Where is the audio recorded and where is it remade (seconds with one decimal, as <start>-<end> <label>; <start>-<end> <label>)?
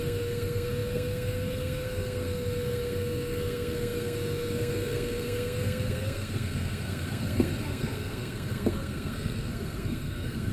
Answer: 0.0-10.5 remade